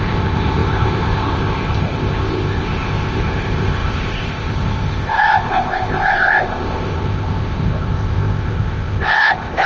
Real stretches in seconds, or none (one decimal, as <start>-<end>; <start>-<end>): none